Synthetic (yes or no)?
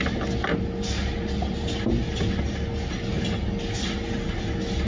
no